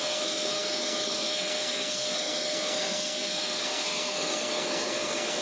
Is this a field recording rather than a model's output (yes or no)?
no